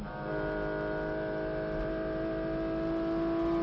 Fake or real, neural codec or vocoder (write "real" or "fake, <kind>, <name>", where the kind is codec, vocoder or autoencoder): real